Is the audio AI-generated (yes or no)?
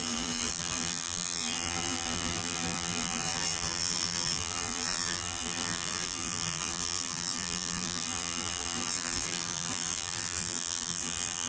yes